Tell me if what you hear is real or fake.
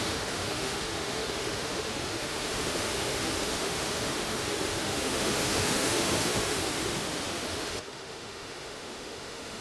fake